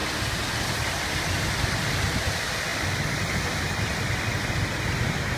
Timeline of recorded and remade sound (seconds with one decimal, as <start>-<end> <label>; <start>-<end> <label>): 0.0-5.4 recorded